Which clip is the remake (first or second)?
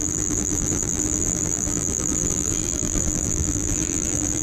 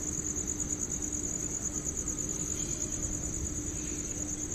first